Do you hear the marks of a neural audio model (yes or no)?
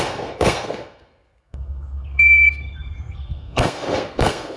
yes